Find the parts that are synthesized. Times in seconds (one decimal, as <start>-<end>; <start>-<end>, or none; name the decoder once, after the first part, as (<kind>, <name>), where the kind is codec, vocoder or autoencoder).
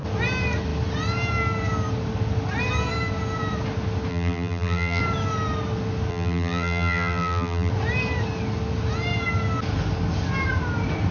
4.1-5.0 (vocoder, BigVGAN v2); 6.1-7.7